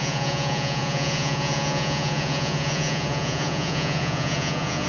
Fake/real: fake